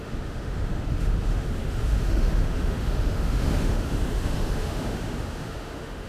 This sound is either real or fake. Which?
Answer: fake